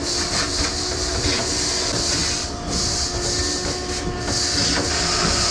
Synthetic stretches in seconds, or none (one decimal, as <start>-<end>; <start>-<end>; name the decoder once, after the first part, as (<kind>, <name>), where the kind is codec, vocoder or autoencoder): none